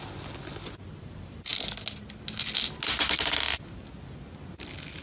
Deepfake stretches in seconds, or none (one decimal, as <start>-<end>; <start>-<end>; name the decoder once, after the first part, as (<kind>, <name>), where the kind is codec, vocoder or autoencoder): none